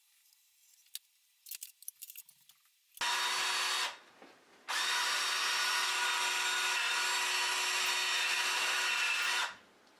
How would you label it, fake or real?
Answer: real